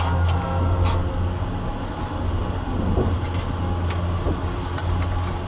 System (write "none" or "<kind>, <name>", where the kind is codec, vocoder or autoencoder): none